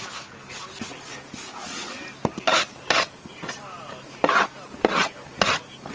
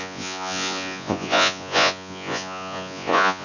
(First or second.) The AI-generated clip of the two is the second